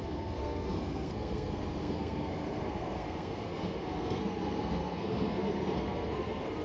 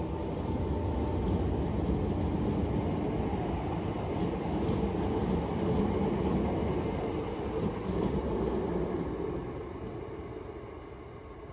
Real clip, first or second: second